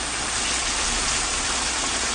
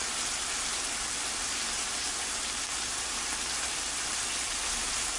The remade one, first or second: second